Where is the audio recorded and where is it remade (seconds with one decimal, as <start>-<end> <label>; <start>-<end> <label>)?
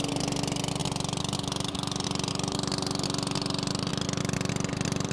0.0-5.1 recorded